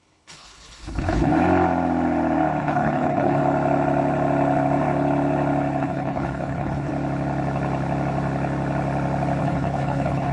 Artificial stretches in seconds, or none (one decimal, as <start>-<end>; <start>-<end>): 0.0-1.3; 2.6-3.4; 5.8-6.9; 9.4-10.3